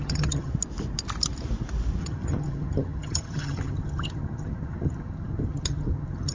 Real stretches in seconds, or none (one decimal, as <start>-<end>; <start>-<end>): 0.5-2.0